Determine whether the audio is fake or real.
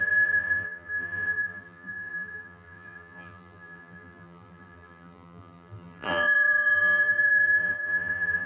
fake